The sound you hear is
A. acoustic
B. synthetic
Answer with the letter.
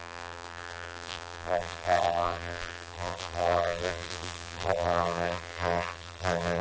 B